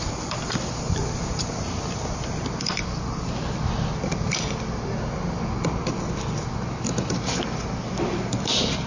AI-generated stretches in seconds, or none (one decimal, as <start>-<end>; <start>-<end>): 2.8-3.7

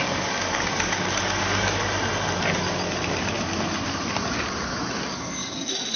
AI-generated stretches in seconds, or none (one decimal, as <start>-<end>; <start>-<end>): 0.0-1.8; 5.0-5.4

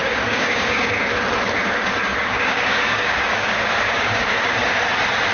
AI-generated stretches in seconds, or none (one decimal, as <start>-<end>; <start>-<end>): 0.0-1.2; 1.6-4.8

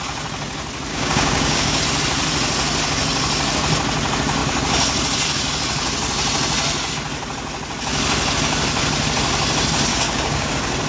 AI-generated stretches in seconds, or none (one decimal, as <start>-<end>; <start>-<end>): 0.9-1.8; 9.9-10.5

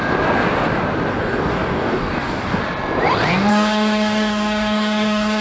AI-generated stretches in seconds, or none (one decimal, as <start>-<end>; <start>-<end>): 1.1-2.6; 3.5-5.4

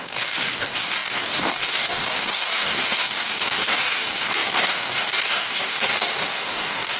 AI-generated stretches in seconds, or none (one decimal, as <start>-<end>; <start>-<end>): 0.0-7.0

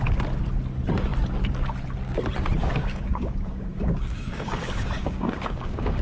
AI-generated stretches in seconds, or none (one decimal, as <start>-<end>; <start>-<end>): 2.6-6.0

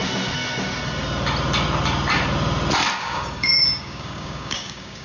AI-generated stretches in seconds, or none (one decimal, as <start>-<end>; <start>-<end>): 3.0-5.0